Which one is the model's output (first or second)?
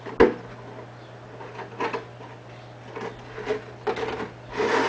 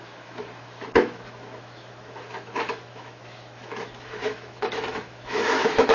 second